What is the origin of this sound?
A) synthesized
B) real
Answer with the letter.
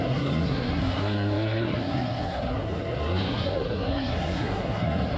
A